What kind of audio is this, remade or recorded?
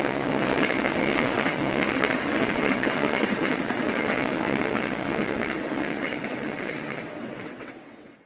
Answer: remade